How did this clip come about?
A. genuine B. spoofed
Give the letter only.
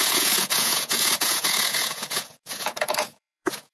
B